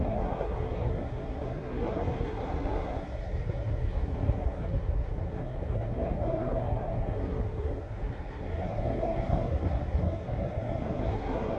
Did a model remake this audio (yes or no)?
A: yes